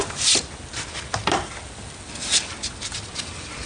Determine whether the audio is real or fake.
real